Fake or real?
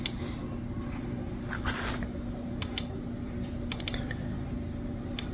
real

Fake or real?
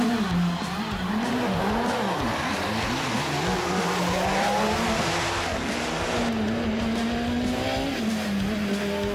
real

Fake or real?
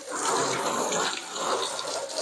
fake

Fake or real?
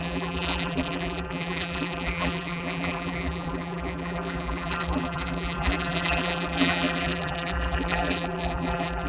fake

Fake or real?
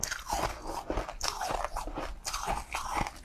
real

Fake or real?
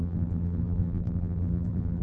fake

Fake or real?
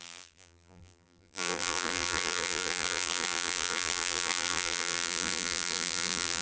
fake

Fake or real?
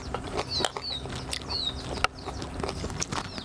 real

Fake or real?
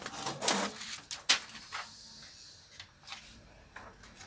real